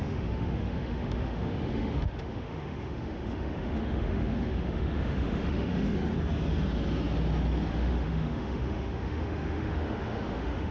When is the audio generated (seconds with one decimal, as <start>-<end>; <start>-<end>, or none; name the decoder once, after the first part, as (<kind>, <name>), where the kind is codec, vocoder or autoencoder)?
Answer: 0.0-6.1 (autoencoder, DAC-VAE); 7.7-10.7